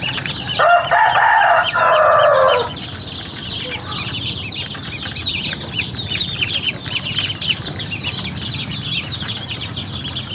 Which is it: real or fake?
real